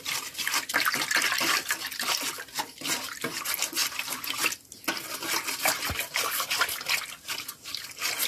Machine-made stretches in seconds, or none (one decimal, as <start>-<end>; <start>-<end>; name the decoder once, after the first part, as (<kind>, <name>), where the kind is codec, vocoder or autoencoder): none